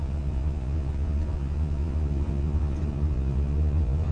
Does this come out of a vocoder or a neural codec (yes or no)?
yes